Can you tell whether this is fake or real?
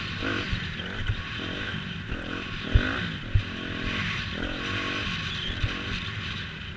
real